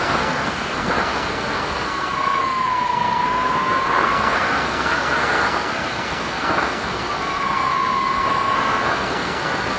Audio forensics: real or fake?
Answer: fake